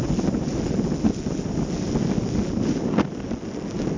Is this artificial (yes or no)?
no